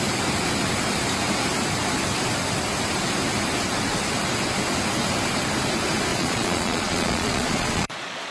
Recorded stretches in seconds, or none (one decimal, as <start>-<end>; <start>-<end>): 0.0-6.1